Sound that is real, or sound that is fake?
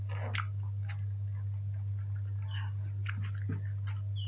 real